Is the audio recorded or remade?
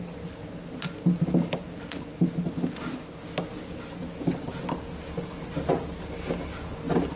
recorded